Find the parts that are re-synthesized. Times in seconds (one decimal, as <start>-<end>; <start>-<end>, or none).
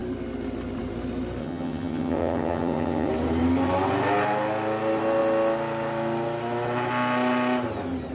1.4-3.1